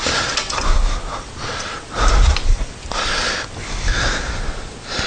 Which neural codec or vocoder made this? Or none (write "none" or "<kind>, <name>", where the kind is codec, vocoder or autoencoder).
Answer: none